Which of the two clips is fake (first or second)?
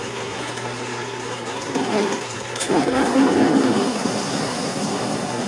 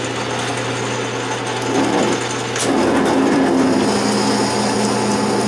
first